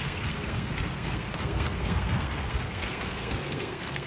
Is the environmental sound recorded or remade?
remade